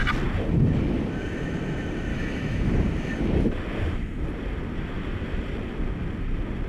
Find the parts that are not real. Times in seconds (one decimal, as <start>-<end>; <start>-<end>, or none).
2.1-2.7